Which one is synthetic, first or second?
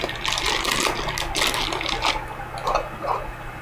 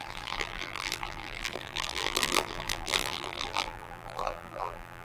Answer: second